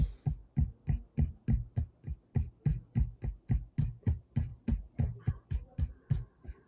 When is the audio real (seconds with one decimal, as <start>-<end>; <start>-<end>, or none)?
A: 0.0-6.7